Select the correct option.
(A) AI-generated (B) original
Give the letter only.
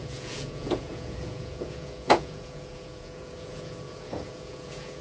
A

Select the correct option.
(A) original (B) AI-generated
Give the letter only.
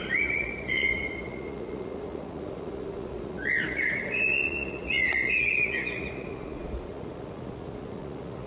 B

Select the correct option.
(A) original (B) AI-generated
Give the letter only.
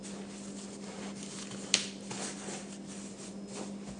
A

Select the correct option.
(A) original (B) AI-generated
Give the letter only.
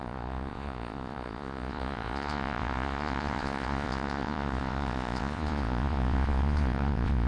B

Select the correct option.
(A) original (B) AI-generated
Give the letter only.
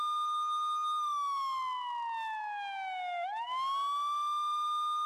A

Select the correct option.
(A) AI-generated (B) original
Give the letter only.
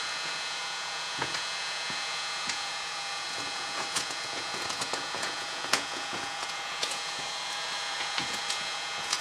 A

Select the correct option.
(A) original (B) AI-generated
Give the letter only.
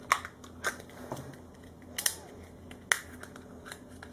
A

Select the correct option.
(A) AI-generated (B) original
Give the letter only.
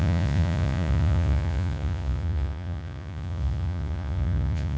A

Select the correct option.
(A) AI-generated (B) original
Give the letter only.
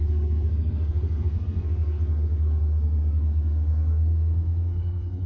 A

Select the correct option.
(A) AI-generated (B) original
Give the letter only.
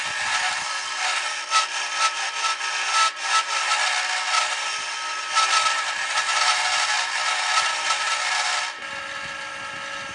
B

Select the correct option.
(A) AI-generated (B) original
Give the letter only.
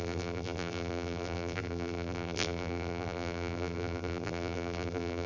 A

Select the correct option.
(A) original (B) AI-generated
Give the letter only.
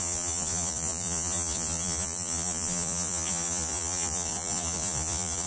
B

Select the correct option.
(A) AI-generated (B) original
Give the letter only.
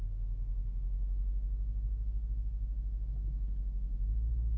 B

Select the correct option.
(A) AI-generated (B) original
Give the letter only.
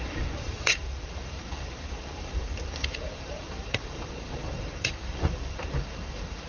A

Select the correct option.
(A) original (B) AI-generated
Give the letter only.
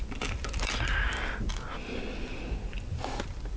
A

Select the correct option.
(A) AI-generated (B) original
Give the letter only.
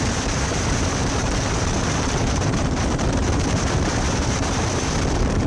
A